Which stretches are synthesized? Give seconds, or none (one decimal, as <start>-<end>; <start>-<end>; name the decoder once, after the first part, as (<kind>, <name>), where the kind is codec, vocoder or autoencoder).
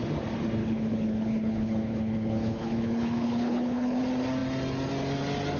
0.6-4.0 (codec, HILCodec)